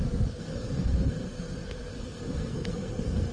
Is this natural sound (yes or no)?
no